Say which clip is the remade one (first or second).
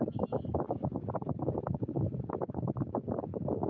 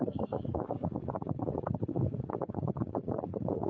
second